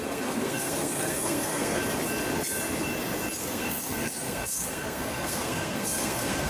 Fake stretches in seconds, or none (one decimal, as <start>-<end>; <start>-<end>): 0.0-1.8; 3.4-6.5